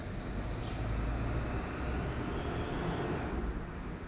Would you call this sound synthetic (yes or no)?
no